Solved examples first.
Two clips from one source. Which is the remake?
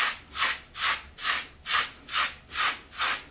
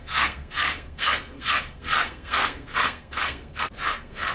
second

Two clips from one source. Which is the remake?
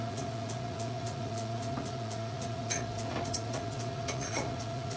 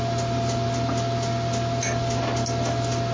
first